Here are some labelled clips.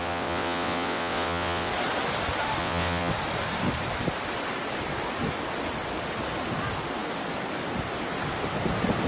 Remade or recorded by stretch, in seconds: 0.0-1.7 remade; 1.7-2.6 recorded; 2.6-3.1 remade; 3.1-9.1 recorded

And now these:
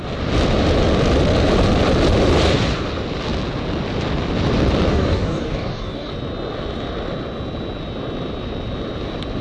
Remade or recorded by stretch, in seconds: 0.0-4.9 recorded; 4.9-6.1 remade; 6.1-9.4 recorded